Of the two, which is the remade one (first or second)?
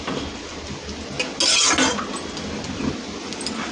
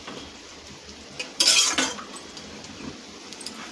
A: second